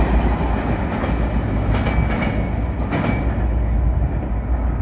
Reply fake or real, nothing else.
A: real